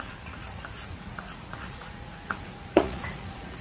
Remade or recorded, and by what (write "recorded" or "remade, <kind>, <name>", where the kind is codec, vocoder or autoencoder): remade, vocoder, Vocos